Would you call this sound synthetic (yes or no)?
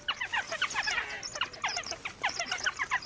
no